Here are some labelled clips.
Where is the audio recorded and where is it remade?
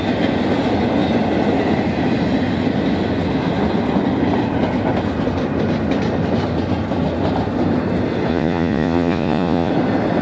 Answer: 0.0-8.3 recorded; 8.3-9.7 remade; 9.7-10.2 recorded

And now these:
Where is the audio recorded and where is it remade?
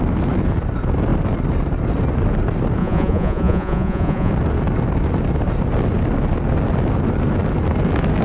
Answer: 0.0-2.8 recorded; 2.8-4.3 remade; 4.3-8.2 recorded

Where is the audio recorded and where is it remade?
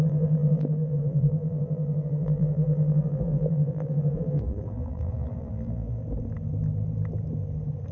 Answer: 0.0-6.0 remade; 6.0-7.9 recorded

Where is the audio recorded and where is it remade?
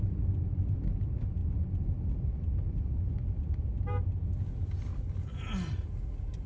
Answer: 0.0-6.5 recorded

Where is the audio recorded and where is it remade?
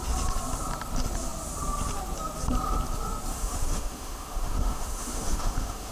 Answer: 0.0-3.3 recorded; 3.3-5.9 remade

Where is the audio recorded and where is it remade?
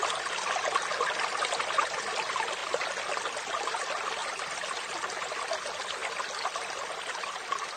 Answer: 0.0-6.0 recorded; 6.0-6.7 remade; 6.7-7.8 recorded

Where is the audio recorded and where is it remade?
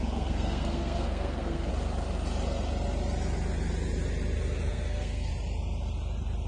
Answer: 0.0-1.7 remade; 1.7-4.7 recorded; 4.7-5.3 remade; 5.3-6.5 recorded